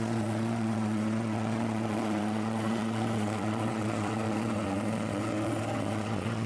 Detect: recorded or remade remade